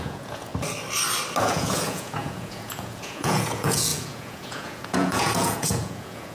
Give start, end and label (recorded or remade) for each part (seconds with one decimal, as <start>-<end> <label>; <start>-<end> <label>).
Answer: 0.0-0.5 remade; 0.5-1.4 recorded; 1.4-6.3 remade